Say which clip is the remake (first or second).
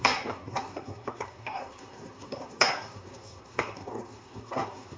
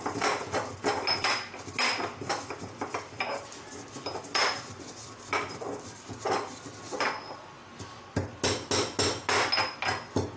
first